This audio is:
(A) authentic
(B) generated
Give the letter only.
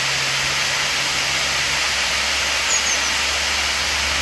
A